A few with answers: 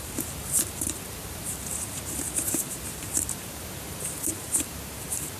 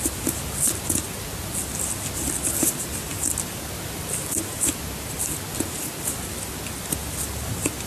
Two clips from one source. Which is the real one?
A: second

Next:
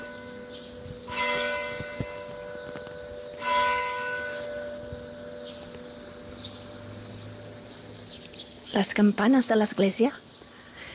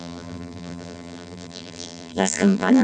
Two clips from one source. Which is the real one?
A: first